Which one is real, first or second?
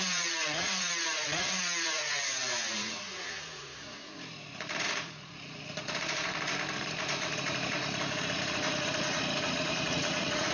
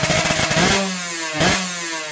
second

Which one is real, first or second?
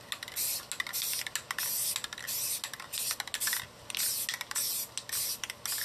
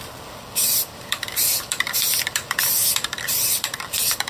first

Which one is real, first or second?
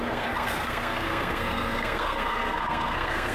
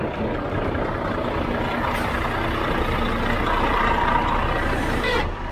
second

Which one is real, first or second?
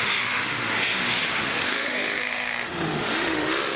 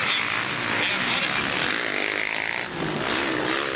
second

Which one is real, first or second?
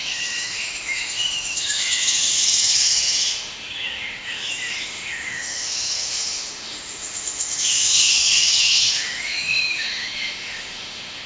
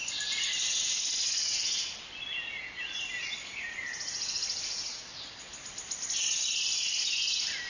second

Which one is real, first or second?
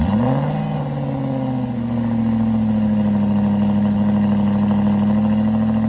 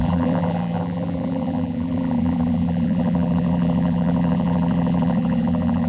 first